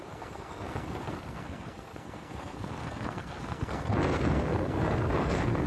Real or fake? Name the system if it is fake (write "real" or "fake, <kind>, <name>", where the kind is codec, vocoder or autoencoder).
fake, codec, SNAC